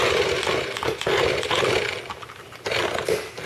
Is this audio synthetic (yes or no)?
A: no